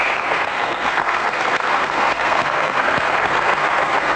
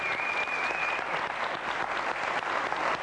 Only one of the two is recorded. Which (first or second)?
second